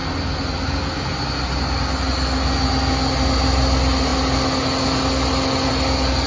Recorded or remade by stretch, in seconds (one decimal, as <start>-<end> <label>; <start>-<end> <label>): 0.0-6.3 recorded

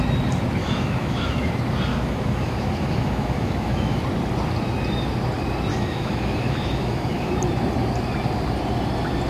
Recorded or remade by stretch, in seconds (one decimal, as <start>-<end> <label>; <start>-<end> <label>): 0.0-0.6 recorded; 0.6-1.5 remade; 1.5-1.9 recorded; 1.9-4.0 remade; 4.0-5.7 recorded; 5.7-7.3 remade; 7.3-9.3 recorded

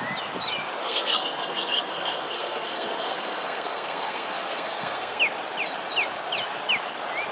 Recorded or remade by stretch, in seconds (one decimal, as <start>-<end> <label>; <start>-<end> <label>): 0.0-0.8 recorded; 0.8-5.2 remade; 5.2-7.3 recorded

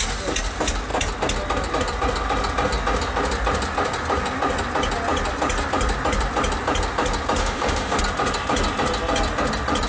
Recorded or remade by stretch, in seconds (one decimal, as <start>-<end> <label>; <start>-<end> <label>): 0.0-7.4 recorded; 7.4-8.0 remade; 8.0-9.9 recorded

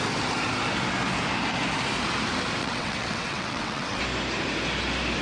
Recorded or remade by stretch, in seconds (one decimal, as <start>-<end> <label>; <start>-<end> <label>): 0.0-2.6 recorded; 2.6-4.0 remade; 4.0-5.2 recorded

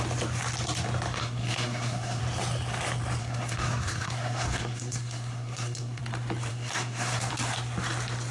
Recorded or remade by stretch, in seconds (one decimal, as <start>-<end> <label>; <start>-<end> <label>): 0.0-1.2 recorded; 1.2-2.2 remade; 2.2-3.2 recorded; 3.2-6.0 remade; 6.0-6.5 recorded; 6.5-7.3 remade; 7.3-8.3 recorded

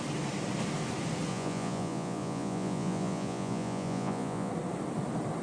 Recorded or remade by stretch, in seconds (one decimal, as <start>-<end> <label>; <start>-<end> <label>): 0.0-1.3 recorded; 1.3-4.5 remade; 4.5-5.4 recorded